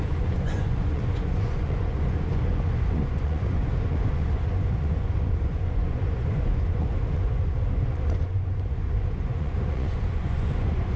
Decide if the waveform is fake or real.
fake